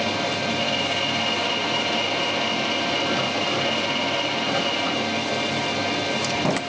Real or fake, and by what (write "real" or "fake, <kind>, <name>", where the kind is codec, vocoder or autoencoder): real